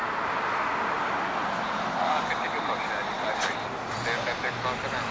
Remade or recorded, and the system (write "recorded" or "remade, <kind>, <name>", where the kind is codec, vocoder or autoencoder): recorded